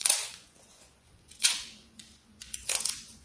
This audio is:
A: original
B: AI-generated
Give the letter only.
B